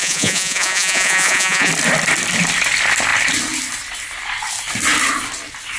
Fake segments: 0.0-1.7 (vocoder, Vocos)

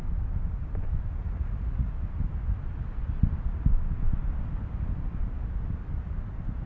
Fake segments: 1.2-1.9 (vocoder, Vocos)